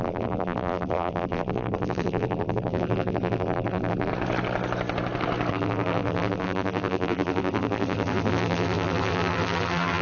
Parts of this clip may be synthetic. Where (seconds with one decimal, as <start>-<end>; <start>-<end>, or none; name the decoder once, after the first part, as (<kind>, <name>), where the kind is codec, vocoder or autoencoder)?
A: 0.0-4.1 (vocoder, BigVGAN v2); 5.5-10.0